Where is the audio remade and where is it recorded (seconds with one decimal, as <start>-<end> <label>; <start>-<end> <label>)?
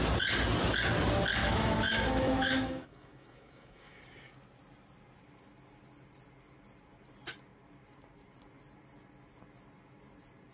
0.0-1.4 recorded; 1.4-4.0 remade; 4.0-10.5 recorded